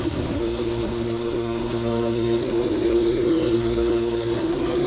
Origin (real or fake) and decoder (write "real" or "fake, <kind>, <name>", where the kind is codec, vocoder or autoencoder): fake, codec, SNAC